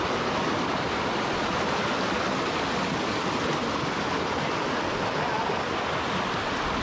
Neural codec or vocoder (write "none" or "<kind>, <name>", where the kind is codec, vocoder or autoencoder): none